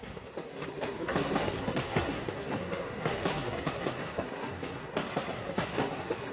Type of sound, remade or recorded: remade